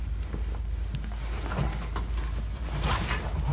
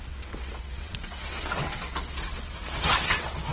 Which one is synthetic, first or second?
second